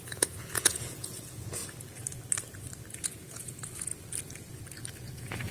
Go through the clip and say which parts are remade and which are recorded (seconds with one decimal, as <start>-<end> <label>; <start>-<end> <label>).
0.0-1.6 remade; 1.6-2.9 recorded; 2.9-3.9 remade; 3.9-5.1 recorded; 5.1-5.5 remade